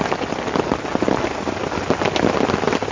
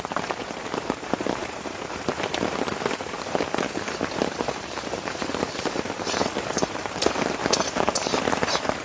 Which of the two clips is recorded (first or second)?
first